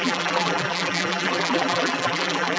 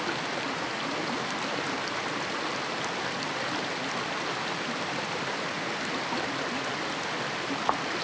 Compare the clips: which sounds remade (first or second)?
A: first